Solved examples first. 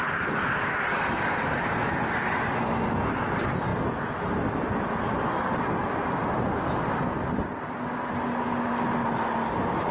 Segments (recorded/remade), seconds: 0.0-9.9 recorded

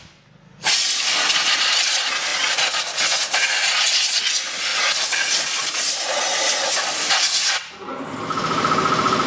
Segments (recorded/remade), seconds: 0.0-9.3 recorded

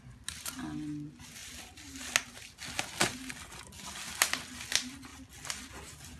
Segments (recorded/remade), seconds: 0.0-6.2 recorded

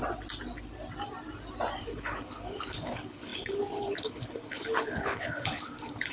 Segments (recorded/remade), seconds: 0.0-1.8 recorded; 1.8-6.1 remade

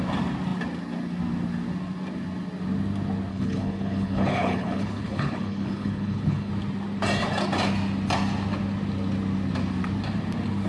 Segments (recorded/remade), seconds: 0.0-3.3 recorded; 3.3-6.5 remade; 6.5-10.7 recorded

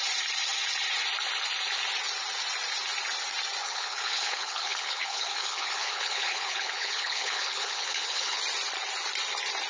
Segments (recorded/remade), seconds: 0.0-3.6 recorded; 3.6-8.4 remade; 8.4-9.7 recorded

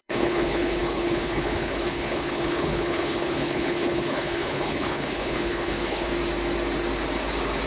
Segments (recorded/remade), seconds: 0.0-6.1 remade; 6.1-7.7 recorded

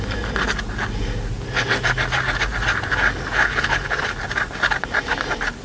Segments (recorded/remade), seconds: 0.0-3.4 recorded; 3.4-4.0 remade; 4.0-5.6 recorded